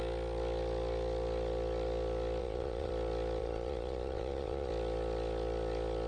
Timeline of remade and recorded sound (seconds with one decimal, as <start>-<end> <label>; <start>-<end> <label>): 0.0-2.4 recorded; 2.4-2.9 remade; 2.9-3.4 recorded; 3.4-4.7 remade; 4.7-6.1 recorded